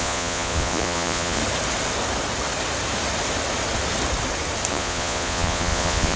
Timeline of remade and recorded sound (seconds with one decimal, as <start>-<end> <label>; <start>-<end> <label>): 0.0-1.4 remade; 1.4-4.7 recorded; 4.7-6.2 remade